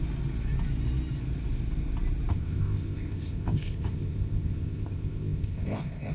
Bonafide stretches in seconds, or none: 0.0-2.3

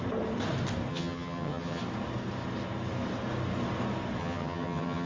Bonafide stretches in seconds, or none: 0.0-0.9; 1.8-4.2